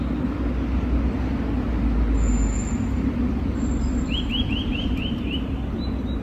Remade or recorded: recorded